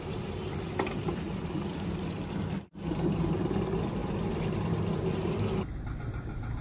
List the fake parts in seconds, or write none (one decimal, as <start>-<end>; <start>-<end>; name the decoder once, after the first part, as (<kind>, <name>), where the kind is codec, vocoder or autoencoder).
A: none